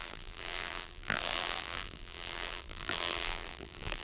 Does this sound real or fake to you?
fake